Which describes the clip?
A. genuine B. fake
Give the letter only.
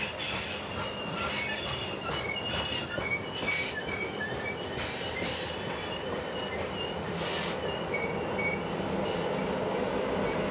A